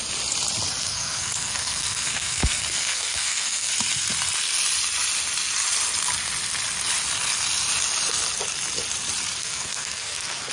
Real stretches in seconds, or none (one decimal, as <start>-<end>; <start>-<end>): 0.0-0.8; 3.7-9.4